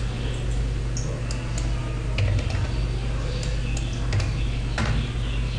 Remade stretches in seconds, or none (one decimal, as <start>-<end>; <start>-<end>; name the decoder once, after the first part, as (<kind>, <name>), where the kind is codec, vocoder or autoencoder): none